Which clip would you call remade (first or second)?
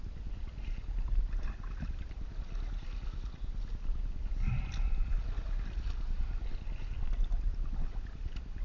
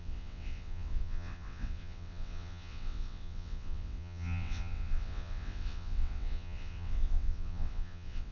second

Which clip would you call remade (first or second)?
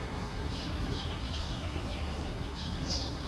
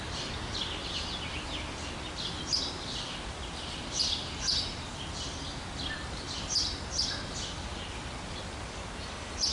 first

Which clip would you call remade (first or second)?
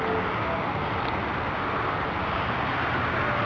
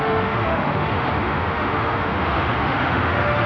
second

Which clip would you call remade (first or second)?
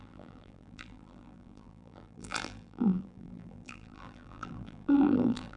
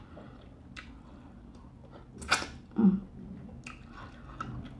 first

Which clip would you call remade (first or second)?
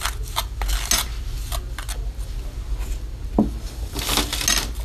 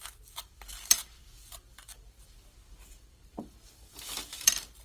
second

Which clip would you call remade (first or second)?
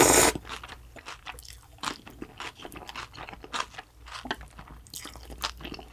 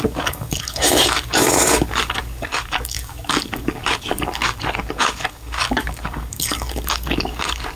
second